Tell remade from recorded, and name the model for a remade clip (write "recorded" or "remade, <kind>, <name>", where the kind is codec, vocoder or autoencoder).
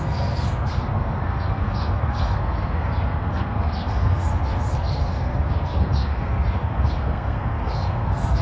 remade, codec, SNAC